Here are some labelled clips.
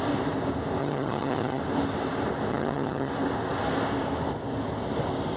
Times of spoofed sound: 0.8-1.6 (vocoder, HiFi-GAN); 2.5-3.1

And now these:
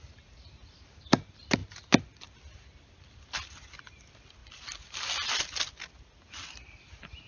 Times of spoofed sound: none

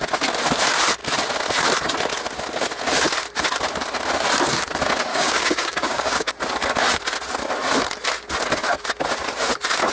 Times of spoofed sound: 5.1-6.3 (codec, DAC)